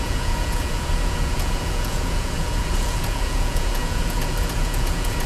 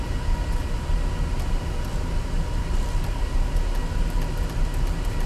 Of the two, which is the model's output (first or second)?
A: first